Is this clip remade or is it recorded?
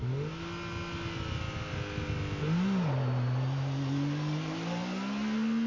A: recorded